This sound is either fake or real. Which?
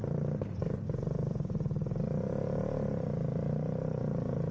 real